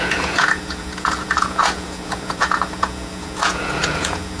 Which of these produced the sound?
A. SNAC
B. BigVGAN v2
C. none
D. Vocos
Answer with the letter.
D